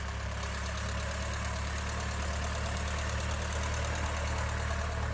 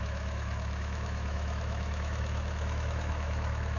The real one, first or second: first